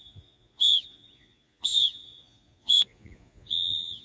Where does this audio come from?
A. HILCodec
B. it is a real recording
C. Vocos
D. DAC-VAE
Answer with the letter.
C